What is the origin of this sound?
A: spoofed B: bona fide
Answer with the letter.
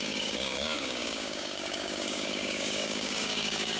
A